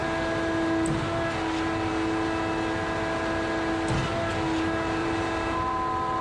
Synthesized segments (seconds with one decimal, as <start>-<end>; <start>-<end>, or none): 5.0-6.2